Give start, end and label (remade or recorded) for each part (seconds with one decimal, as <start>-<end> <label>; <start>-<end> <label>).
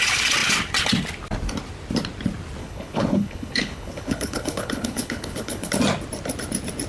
0.0-2.6 recorded; 2.6-5.7 remade; 5.7-6.9 recorded